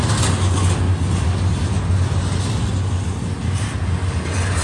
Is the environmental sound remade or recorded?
recorded